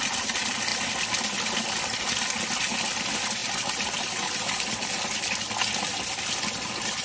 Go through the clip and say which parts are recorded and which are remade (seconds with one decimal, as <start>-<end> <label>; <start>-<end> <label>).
0.0-7.0 recorded